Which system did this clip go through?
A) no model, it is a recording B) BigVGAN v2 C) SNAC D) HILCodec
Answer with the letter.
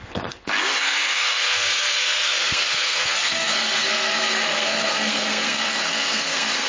C